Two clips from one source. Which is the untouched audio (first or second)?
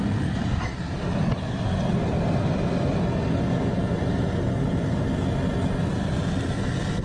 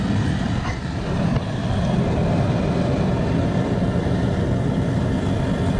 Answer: first